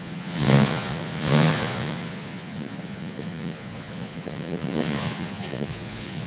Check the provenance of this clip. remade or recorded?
remade